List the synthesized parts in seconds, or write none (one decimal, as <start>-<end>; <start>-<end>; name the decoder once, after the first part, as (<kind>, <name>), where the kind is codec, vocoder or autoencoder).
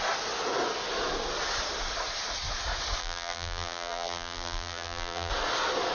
3.0-5.3 (vocoder, BigVGAN v2)